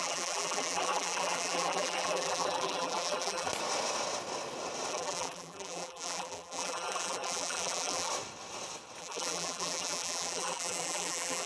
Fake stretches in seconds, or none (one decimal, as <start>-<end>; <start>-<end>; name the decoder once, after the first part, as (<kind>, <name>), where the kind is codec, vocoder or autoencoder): 0.0-3.5 (vocoder, BigVGAN v2); 4.9-8.1; 9.0-11.5

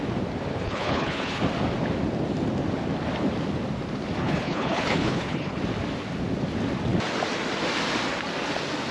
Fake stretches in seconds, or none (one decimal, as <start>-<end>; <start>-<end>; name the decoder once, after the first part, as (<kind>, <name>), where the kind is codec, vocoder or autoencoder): 0.5-1.4 (codec, HILCodec); 4.2-5.6

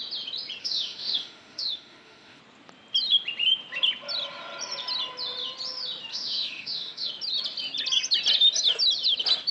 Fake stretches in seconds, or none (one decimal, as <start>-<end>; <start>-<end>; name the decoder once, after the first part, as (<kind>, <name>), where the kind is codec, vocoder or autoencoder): 0.6-2.4 (autoencoder, DAC-VAE); 6.1-7.1

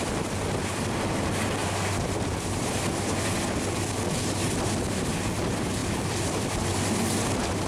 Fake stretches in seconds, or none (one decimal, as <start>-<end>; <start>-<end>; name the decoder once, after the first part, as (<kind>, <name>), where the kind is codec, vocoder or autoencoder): 1.6-3.8 (vocoder, BigVGAN v2); 5.8-6.9

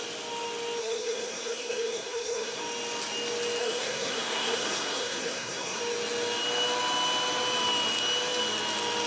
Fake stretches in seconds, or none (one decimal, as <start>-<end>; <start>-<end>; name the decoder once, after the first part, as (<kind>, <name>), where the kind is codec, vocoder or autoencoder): 0.8-2.6 (codec, SNAC); 3.6-5.8

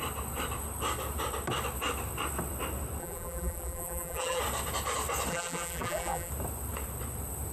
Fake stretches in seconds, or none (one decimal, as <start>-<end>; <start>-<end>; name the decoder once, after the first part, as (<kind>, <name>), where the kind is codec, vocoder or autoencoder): 3.0-4.4 (vocoder, BigVGAN v2); 5.3-6.3